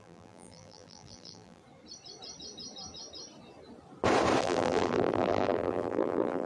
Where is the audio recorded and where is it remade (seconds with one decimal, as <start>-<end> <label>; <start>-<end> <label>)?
0.0-1.6 remade; 1.6-4.4 recorded; 4.4-6.5 remade